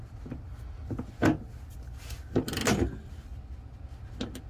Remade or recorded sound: recorded